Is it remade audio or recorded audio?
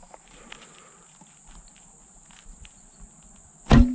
recorded